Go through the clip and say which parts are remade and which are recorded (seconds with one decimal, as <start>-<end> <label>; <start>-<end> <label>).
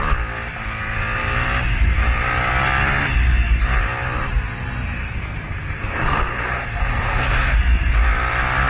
0.0-5.0 recorded; 5.0-7.6 remade; 7.6-8.7 recorded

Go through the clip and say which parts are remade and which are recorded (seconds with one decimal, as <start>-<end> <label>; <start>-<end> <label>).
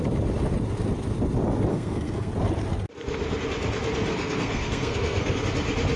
0.0-1.7 recorded; 1.7-2.3 remade; 2.3-4.1 recorded; 4.1-5.4 remade; 5.4-6.0 recorded